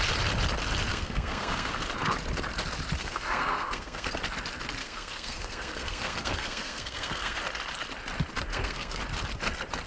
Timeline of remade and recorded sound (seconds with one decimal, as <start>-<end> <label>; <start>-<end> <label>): 0.0-0.9 recorded; 0.9-1.7 remade; 1.7-3.0 recorded; 3.0-4.1 remade; 4.1-4.8 recorded; 4.8-7.4 remade; 7.4-8.5 recorded; 8.5-9.0 remade; 9.0-9.9 recorded